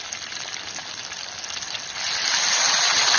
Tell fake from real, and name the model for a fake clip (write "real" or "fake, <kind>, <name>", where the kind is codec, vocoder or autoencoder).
real